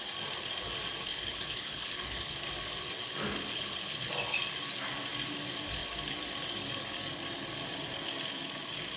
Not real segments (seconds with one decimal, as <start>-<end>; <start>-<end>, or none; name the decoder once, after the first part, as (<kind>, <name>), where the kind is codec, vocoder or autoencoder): 1.1-2.3 (codec, HILCodec); 3.5-4.1